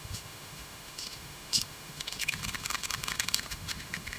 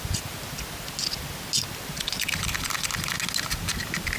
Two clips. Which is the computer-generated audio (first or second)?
first